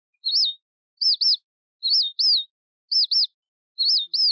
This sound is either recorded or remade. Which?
recorded